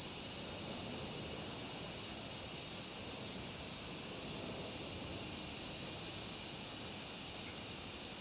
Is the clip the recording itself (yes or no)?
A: yes